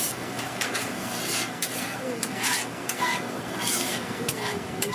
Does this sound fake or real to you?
fake